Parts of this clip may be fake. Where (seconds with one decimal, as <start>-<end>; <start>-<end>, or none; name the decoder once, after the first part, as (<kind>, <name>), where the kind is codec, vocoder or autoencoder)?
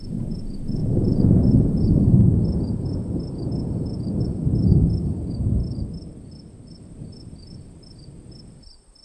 0.0-0.8 (vocoder, BigVGAN v2); 4.2-9.0